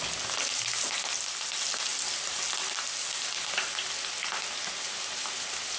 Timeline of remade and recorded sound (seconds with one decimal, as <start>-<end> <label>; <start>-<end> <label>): 0.0-5.8 recorded